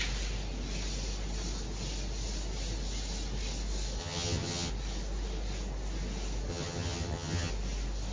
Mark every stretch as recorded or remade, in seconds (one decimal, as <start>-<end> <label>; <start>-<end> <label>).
0.0-4.0 recorded; 4.0-4.7 remade; 4.7-6.5 recorded; 6.5-7.5 remade; 7.5-8.1 recorded